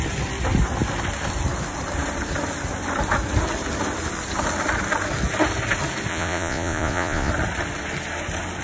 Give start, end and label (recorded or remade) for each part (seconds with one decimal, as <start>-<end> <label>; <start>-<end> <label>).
0.0-6.1 recorded; 6.1-7.3 remade; 7.3-8.6 recorded